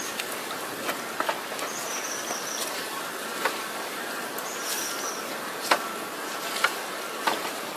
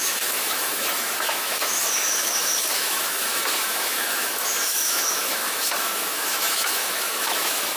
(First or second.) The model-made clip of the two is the second